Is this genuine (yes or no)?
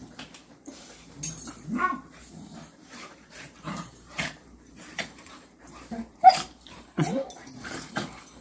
no